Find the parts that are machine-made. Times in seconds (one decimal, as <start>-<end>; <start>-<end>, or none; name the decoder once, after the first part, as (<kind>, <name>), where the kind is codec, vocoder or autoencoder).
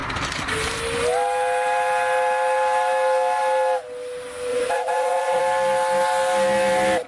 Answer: 4.5-5.4 (vocoder, Vocos)